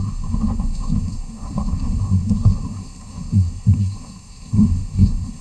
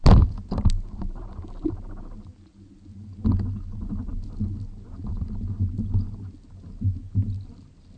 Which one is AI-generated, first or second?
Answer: first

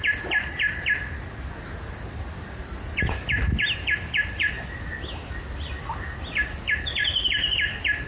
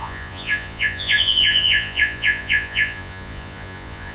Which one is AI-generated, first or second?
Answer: second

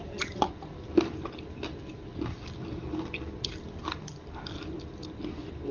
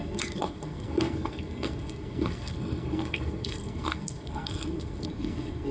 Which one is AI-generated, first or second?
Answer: second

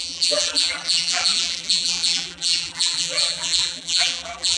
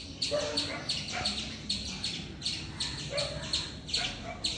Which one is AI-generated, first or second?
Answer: first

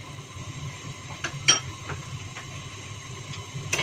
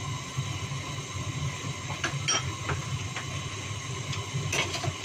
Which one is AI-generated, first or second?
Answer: first